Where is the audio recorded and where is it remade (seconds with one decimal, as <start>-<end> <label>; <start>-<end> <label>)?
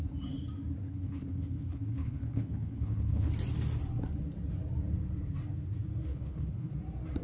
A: 0.0-0.8 recorded; 0.8-3.3 remade; 3.3-6.1 recorded; 6.1-6.7 remade; 6.7-7.2 recorded